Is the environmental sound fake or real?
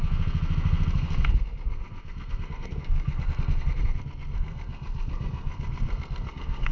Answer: fake